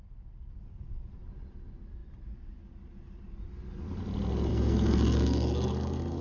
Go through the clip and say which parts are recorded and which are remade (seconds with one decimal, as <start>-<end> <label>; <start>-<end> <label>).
0.0-4.5 recorded; 4.5-6.2 remade